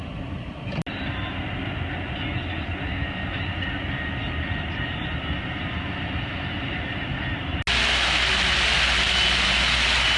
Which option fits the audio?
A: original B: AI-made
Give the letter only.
A